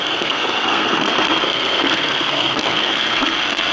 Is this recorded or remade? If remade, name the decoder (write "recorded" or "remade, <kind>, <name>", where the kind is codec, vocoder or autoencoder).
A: remade, codec, SNAC